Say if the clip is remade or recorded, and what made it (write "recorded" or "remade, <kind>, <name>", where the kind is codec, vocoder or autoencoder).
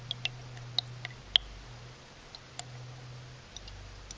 recorded